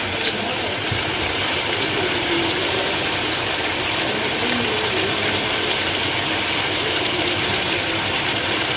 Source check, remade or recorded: remade